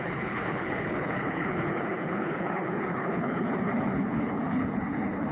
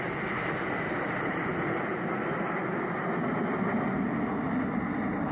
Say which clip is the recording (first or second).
second